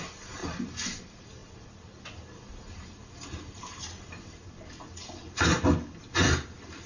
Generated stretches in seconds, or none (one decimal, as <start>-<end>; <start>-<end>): none